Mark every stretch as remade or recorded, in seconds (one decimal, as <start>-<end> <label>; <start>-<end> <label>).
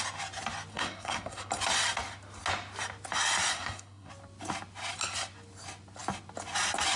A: 0.0-0.7 recorded; 0.7-1.5 remade; 1.5-3.5 recorded; 3.5-4.1 remade; 4.1-7.0 recorded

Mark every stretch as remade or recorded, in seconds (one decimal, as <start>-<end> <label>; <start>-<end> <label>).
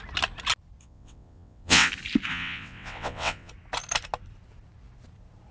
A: 0.0-0.8 recorded; 0.8-1.9 remade; 1.9-2.3 recorded; 2.3-3.5 remade; 3.5-5.5 recorded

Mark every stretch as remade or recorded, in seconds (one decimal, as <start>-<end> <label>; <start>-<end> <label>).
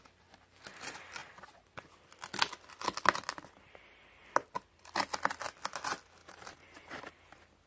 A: 0.0-6.2 recorded; 6.2-7.1 remade; 7.1-7.7 recorded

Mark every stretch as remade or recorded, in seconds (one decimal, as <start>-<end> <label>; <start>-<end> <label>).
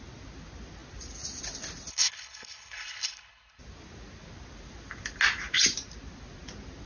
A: 0.0-1.9 recorded; 1.9-3.6 remade; 3.6-6.9 recorded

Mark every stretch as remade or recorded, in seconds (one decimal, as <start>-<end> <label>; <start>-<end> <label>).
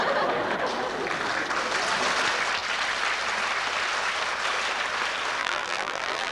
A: 0.0-5.4 recorded; 5.4-6.3 remade